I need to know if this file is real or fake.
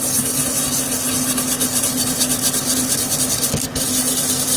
real